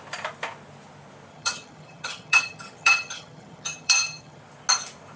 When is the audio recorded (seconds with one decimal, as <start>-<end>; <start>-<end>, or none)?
0.0-1.3; 4.4-5.2